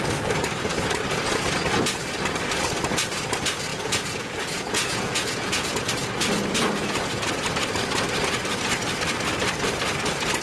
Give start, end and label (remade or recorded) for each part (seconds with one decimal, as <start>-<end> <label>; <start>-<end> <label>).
0.0-3.7 recorded; 3.7-5.9 remade; 5.9-6.8 recorded; 6.8-7.3 remade; 7.3-10.4 recorded